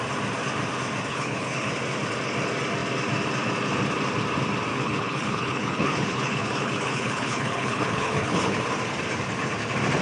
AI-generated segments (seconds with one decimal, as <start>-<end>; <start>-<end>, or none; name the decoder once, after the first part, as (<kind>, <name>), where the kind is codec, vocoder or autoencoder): 1.1-1.7 (codec, HILCodec); 4.7-8.6